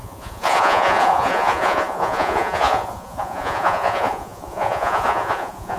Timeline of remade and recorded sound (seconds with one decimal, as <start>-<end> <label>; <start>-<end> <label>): 0.0-5.8 remade